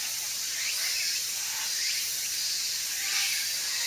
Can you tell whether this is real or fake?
real